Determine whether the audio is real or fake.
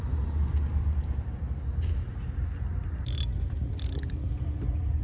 real